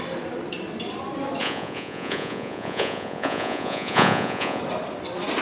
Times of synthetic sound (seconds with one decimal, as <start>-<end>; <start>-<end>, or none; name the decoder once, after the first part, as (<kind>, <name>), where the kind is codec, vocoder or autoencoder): 1.4-4.6 (vocoder, Vocos)